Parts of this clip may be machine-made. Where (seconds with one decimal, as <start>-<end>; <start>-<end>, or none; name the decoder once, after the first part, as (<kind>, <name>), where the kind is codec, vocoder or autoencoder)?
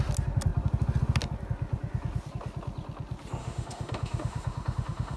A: 3.4-5.2 (autoencoder, DAC-VAE)